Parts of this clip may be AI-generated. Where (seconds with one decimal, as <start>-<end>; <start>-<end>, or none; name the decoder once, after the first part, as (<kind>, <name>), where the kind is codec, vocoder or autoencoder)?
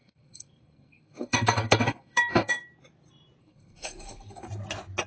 0.0-2.6 (codec, SNAC); 3.4-4.5